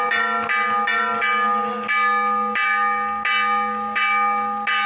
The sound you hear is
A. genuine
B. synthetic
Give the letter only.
A